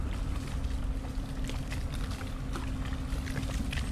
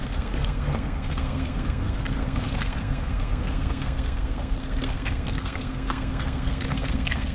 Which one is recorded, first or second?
first